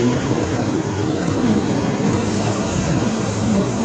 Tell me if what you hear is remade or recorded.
remade